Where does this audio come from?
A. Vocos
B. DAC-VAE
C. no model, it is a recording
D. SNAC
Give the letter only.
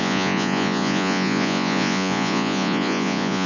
A